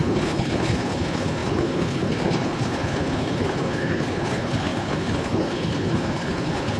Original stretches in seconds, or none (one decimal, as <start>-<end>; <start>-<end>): none